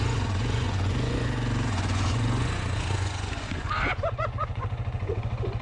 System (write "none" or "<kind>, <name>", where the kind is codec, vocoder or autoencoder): vocoder, Vocos